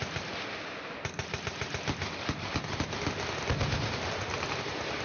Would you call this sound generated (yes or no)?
no